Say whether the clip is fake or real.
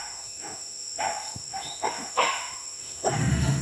fake